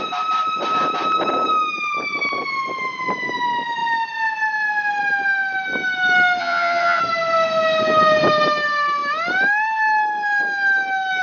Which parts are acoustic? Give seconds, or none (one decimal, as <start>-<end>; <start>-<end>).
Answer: 0.0-6.4; 7.0-11.2